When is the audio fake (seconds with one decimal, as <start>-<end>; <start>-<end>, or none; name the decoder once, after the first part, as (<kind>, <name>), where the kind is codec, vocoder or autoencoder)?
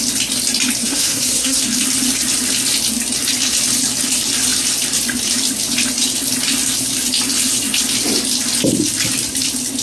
0.8-1.6 (codec, SNAC)